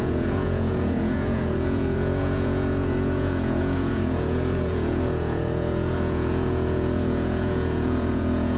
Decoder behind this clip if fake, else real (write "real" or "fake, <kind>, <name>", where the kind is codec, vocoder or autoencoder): fake, vocoder, Vocos